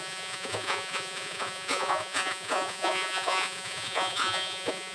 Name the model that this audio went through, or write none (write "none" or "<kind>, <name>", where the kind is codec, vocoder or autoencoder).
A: vocoder, Vocos